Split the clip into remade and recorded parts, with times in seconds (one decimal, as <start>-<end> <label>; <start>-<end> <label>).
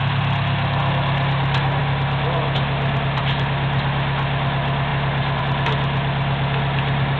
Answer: 0.0-7.2 recorded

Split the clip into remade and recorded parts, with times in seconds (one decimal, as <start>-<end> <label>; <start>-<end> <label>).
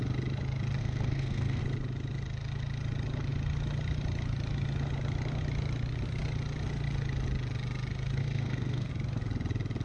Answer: 0.0-0.8 recorded; 0.8-1.6 remade; 1.6-8.2 recorded; 8.2-8.9 remade; 8.9-9.8 recorded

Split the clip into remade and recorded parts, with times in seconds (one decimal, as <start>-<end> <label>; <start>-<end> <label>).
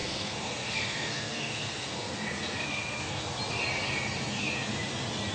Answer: 0.0-3.2 remade; 3.2-5.3 recorded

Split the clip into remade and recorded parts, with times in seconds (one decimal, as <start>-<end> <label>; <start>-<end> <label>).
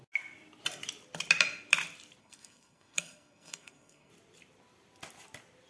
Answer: 0.0-2.2 recorded; 2.2-4.1 remade; 4.1-5.7 recorded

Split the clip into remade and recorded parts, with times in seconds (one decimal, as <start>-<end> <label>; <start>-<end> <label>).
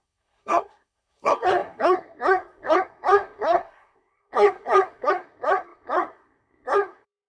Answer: 0.0-7.3 remade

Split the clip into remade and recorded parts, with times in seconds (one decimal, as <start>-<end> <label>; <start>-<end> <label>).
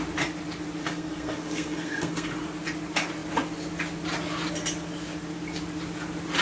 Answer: 0.0-0.8 recorded; 0.8-2.3 remade; 2.3-6.4 recorded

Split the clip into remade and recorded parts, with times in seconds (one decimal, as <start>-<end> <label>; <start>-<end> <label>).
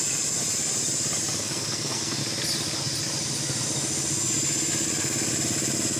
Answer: 0.0-1.4 recorded; 1.4-2.2 remade; 2.2-6.0 recorded